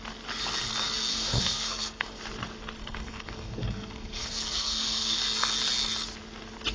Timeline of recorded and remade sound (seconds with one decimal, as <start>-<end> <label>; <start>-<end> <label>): 0.0-1.1 recorded; 1.1-2.2 remade; 2.2-2.8 recorded; 2.8-5.2 remade; 5.2-6.7 recorded

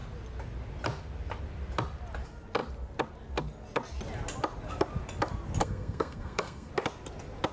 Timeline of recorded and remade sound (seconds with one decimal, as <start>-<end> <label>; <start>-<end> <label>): 0.0-5.6 recorded; 5.6-6.7 remade; 6.7-7.5 recorded

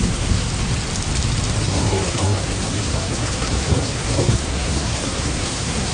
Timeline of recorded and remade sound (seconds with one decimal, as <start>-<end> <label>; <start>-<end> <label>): 0.0-0.5 remade; 0.5-1.6 recorded; 1.6-5.9 remade

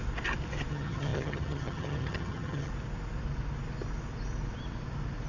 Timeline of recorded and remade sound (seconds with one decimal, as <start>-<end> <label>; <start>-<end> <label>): 0.0-0.7 recorded; 0.7-2.7 remade; 2.7-5.3 recorded

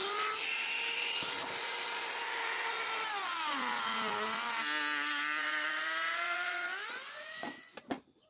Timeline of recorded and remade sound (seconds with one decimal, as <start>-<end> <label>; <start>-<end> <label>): 0.0-5.4 recorded; 5.4-7.8 remade; 7.8-8.3 recorded

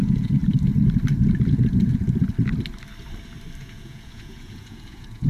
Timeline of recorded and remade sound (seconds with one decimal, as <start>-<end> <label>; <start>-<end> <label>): 0.0-0.4 remade; 0.4-3.6 recorded; 3.6-5.3 remade

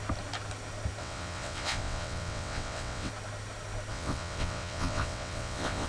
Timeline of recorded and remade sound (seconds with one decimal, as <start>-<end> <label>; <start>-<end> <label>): 0.0-1.0 recorded; 1.0-3.1 remade; 3.1-3.9 recorded; 3.9-5.9 remade